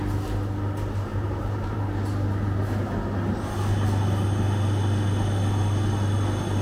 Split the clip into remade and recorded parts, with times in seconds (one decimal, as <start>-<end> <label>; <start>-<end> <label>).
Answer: 0.0-1.1 recorded; 1.1-1.9 remade; 1.9-6.6 recorded